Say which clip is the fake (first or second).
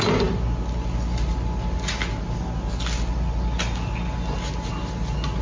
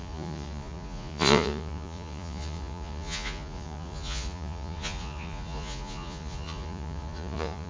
second